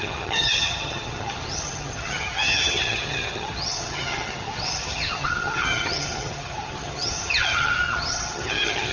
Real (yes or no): no